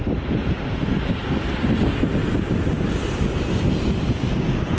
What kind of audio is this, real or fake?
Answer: real